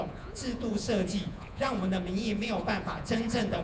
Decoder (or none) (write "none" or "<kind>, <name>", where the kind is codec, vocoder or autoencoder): vocoder, Vocos